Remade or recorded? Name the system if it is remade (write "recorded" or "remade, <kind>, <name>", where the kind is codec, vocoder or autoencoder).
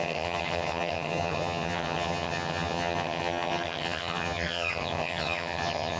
remade, vocoder, HiFi-GAN